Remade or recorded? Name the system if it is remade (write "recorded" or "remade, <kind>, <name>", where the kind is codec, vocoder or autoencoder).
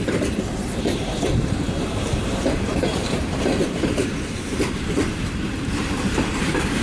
remade, vocoder, BigVGAN v2